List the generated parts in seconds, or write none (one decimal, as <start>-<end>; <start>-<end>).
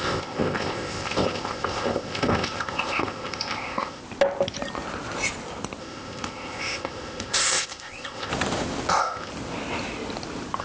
0.0-4.0; 5.8-8.3; 8.9-9.3